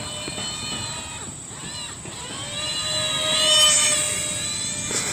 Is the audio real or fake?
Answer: real